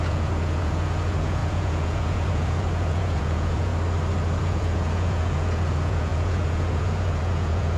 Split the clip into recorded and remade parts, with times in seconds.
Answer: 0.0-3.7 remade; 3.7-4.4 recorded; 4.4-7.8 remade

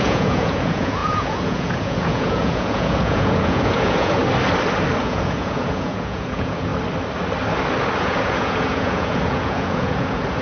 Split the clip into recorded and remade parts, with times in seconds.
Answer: 0.0-4.2 remade; 4.2-5.0 recorded; 5.0-6.7 remade; 6.7-8.0 recorded; 8.0-10.4 remade

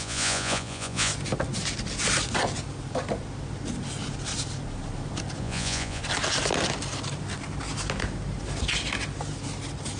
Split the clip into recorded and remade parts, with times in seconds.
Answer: 0.0-1.1 remade; 1.1-5.4 recorded; 5.4-6.0 remade; 6.0-10.0 recorded